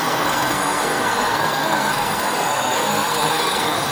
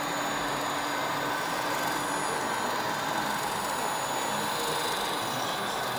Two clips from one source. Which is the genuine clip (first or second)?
second